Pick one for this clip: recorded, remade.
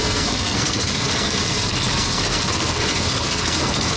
remade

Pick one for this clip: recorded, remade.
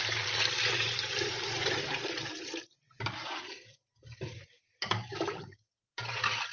remade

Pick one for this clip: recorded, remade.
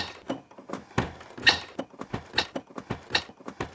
recorded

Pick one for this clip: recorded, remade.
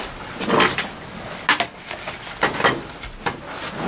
recorded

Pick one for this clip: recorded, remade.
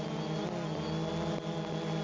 recorded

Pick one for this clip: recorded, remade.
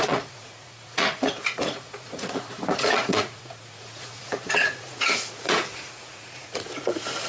remade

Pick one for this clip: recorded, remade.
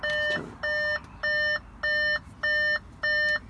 recorded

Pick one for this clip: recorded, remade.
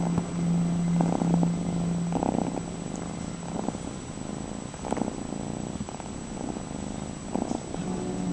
recorded